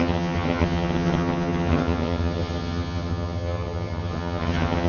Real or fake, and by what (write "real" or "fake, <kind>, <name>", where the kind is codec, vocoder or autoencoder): fake, vocoder, HiFi-GAN